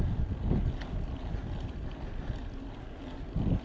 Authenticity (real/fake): real